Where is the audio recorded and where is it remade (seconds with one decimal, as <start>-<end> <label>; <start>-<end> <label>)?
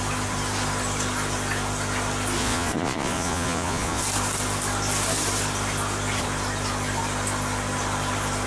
0.0-2.4 recorded; 2.4-4.0 remade; 4.0-8.5 recorded